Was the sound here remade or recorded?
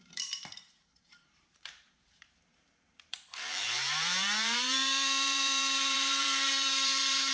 remade